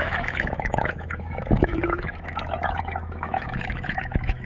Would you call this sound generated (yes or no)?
yes